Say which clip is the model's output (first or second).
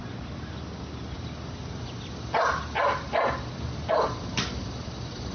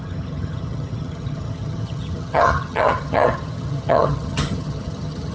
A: second